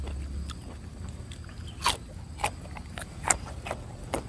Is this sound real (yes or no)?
yes